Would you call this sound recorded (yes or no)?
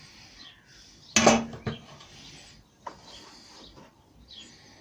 yes